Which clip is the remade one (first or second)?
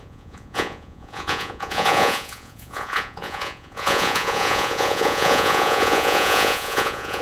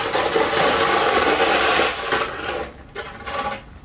first